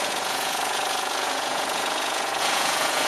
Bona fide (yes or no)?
no